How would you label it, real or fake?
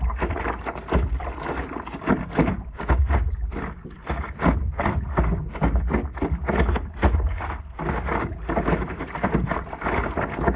real